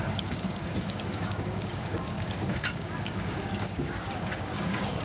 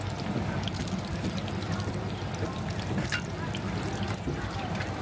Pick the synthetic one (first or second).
first